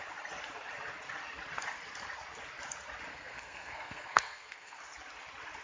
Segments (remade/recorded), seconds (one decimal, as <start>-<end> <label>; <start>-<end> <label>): 0.0-3.1 recorded; 3.1-4.8 remade; 4.8-5.6 recorded